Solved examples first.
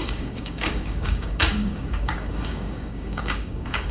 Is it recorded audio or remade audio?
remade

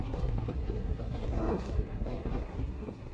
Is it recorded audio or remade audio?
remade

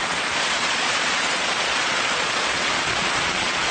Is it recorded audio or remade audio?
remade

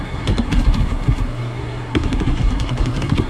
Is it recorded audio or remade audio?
remade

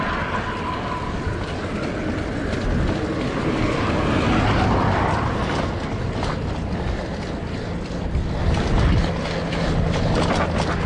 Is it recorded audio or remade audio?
recorded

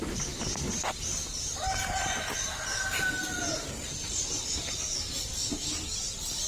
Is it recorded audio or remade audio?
remade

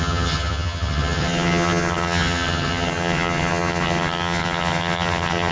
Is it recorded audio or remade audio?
remade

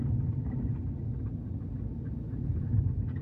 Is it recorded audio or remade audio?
recorded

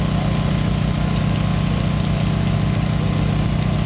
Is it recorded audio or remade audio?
recorded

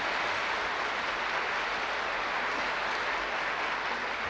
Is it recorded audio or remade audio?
recorded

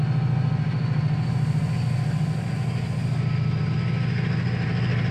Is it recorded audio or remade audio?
recorded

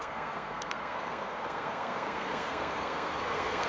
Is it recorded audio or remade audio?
remade